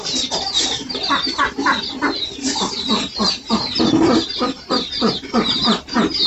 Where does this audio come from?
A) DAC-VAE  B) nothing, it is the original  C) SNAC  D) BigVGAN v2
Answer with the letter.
B